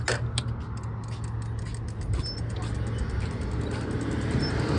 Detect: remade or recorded recorded